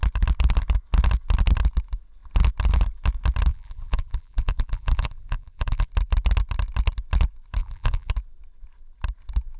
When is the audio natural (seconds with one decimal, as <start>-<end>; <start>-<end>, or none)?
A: 0.0-3.5; 5.9-7.6; 8.1-9.6